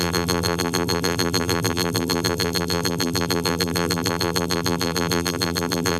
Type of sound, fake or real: fake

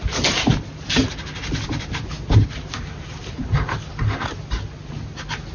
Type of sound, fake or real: real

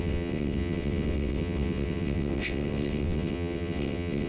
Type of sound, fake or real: fake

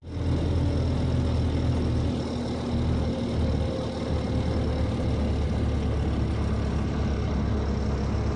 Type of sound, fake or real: real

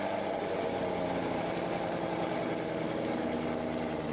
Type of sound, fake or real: real